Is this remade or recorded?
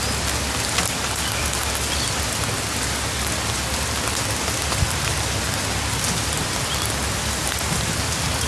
recorded